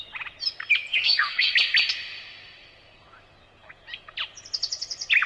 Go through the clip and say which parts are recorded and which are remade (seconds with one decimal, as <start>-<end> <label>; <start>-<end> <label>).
0.0-0.9 recorded; 0.9-1.5 remade; 1.5-5.3 recorded